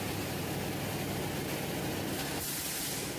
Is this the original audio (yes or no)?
yes